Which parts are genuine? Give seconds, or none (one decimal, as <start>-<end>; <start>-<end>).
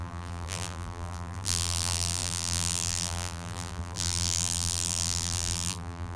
none